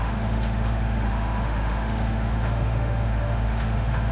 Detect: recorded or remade remade